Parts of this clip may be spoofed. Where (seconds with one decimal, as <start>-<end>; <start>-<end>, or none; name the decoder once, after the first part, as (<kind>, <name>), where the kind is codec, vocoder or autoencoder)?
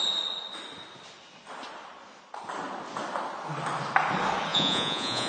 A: 4.5-5.3 (vocoder, Vocos)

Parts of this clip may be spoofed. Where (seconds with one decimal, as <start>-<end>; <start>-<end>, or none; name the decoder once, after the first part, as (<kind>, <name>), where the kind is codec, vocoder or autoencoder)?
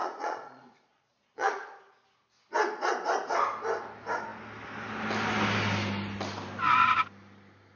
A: 0.0-1.8 (vocoder, Vocos)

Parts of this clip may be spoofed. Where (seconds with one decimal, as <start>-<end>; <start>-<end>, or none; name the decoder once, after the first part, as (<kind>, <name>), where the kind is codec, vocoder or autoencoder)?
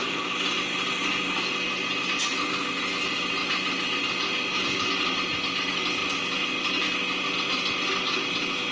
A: none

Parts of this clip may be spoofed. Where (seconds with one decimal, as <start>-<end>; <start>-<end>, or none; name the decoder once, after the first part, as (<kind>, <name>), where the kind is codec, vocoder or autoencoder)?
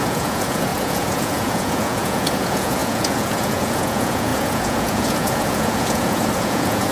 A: 0.0-6.9 (vocoder, Vocos)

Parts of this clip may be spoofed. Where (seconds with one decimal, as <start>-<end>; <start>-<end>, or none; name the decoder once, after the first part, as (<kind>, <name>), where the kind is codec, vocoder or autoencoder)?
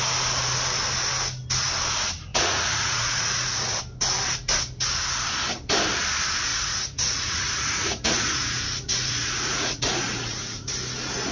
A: 2.3-3.8 (vocoder, Vocos); 6.5-10.7